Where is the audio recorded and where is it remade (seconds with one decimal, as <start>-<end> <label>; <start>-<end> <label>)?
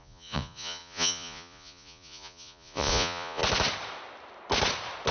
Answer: 0.0-3.4 remade; 3.4-5.1 recorded